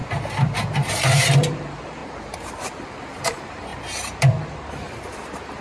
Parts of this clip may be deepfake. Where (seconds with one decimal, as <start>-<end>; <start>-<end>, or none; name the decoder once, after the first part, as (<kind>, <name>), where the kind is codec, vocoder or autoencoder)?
0.9-2.0 (vocoder, BigVGAN v2); 2.5-3.7; 4.7-5.6